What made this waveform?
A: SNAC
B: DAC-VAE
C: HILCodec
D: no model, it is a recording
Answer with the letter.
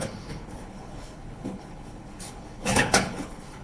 C